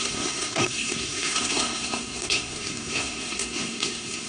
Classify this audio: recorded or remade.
remade